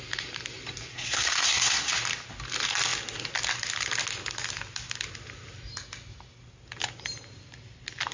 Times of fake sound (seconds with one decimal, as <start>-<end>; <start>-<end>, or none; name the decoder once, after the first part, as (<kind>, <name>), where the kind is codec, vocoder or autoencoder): 0.9-1.9 (codec, SNAC)